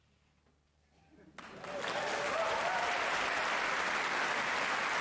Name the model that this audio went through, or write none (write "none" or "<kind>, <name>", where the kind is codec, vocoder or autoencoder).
none